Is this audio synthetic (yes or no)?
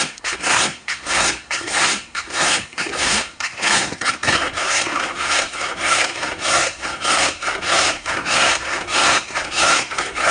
yes